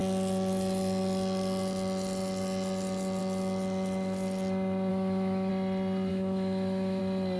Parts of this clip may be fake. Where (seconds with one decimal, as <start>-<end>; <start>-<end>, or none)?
4.9-5.5; 6.1-7.0